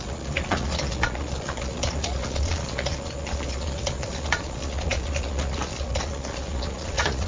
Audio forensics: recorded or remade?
remade